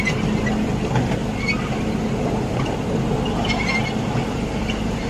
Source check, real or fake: real